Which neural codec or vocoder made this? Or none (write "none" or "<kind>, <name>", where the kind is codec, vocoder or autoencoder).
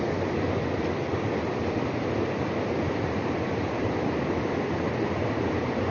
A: none